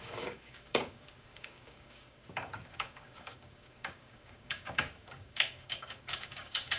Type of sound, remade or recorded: remade